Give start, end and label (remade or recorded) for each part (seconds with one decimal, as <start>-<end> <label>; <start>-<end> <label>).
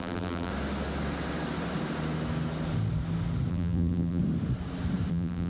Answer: 0.0-0.5 remade; 0.5-3.5 recorded; 3.5-4.2 remade; 4.2-5.1 recorded; 5.1-5.5 remade